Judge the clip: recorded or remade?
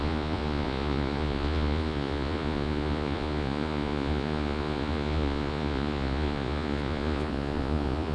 remade